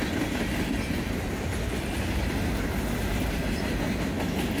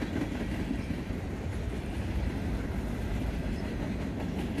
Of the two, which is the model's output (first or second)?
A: second